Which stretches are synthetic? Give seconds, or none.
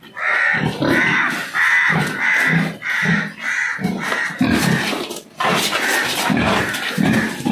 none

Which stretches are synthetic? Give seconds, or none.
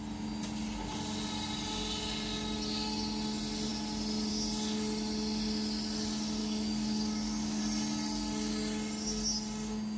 6.4-7.6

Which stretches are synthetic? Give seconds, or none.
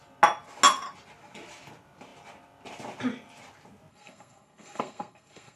3.9-5.6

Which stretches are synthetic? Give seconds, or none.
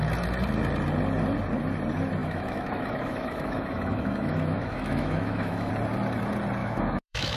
2.2-5.7; 6.6-7.4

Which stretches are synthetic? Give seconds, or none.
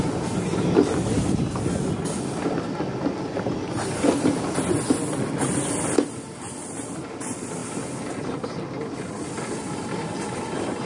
none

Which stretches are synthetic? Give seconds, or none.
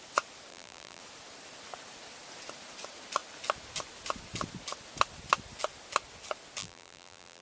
0.5-1.0; 6.6-7.4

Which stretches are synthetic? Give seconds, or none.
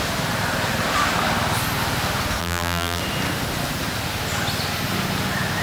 2.4-3.0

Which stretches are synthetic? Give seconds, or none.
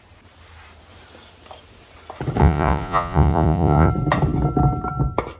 2.4-3.9